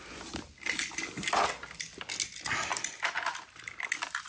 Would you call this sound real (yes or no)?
yes